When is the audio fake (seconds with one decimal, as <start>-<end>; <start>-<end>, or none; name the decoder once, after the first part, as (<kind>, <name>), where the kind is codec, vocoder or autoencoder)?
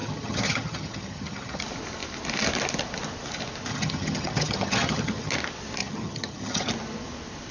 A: 0.0-1.6 (vocoder, HiFi-GAN); 3.7-5.3; 5.8-6.7